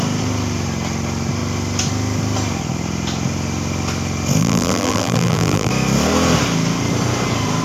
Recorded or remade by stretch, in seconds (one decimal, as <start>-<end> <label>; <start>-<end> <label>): 0.0-4.4 recorded; 4.4-5.7 remade; 5.7-7.6 recorded